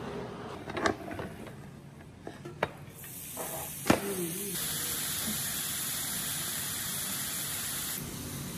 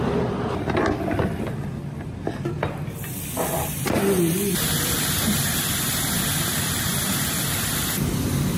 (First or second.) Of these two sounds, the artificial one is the second